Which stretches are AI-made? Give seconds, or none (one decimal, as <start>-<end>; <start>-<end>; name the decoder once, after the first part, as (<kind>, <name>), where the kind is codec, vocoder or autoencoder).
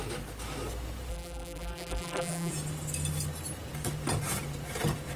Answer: 1.1-2.5 (vocoder, BigVGAN v2)